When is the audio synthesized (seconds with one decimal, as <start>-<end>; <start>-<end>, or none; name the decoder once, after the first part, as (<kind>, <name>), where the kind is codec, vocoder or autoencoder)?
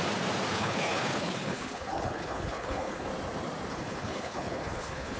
0.5-3.1 (codec, HILCodec); 3.7-5.2